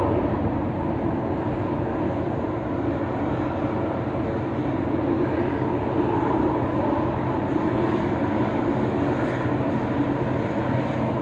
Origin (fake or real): real